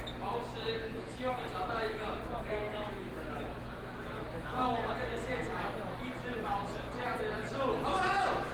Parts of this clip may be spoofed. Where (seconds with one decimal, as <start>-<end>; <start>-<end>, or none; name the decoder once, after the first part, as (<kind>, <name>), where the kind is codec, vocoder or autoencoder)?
0.8-1.4 (autoencoder, DAC-VAE); 2.7-4.9